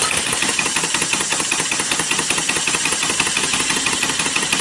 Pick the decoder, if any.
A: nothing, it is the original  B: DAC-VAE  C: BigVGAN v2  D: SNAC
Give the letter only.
A